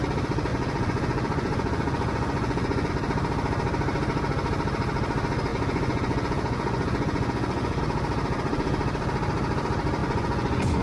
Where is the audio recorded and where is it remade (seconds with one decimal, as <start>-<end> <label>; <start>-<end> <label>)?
0.0-0.5 recorded; 0.5-2.9 remade; 2.9-5.5 recorded; 5.5-7.8 remade; 7.8-10.0 recorded; 10.0-10.8 remade